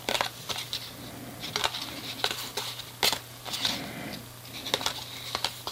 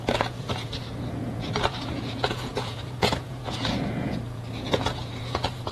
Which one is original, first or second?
first